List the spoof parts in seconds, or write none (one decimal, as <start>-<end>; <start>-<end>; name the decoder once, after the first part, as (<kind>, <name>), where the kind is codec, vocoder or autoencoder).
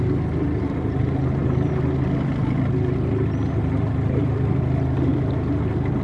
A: none